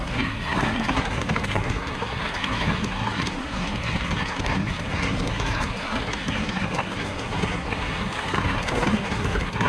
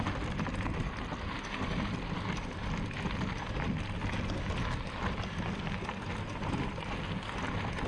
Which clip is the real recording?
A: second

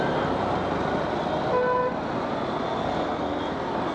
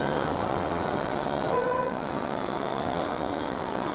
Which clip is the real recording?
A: first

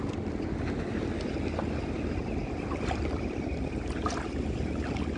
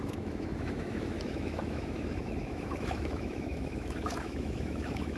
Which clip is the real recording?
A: first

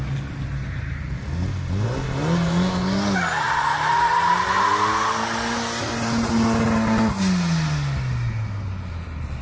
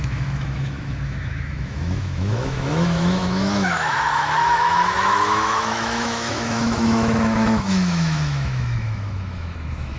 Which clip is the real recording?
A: first